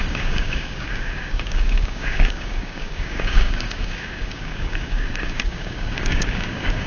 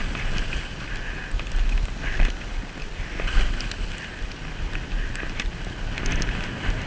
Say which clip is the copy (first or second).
first